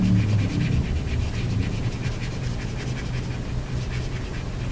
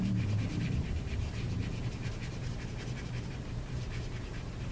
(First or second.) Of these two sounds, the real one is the first